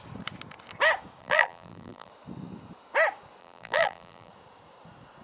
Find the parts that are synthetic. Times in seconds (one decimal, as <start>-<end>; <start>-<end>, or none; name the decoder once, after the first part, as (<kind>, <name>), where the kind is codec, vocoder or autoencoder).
1.2-2.1 (vocoder, BigVGAN v2); 3.4-4.3